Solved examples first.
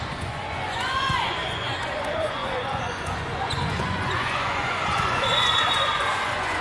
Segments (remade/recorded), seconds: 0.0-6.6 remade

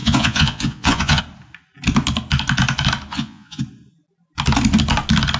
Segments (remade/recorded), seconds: 0.0-1.2 remade; 1.2-3.1 recorded; 3.1-3.6 remade; 3.6-5.4 recorded

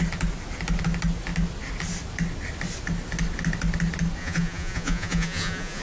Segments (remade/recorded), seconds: 0.0-4.2 recorded; 4.2-5.8 remade

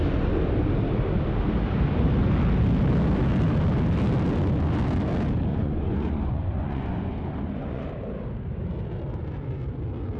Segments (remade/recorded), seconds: 0.0-5.5 recorded; 5.5-7.9 remade; 7.9-10.2 recorded

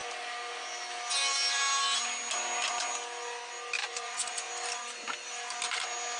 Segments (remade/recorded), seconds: 0.0-3.8 recorded; 3.8-4.5 remade; 4.5-6.2 recorded